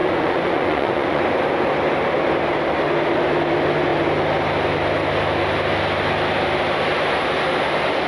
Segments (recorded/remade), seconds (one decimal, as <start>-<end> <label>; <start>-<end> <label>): 0.0-1.2 remade; 1.2-8.1 recorded